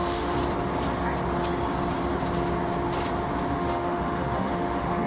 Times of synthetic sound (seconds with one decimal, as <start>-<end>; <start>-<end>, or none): 0.0-0.4; 3.5-5.1